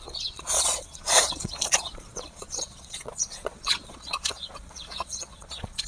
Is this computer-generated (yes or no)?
yes